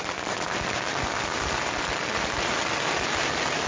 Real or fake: real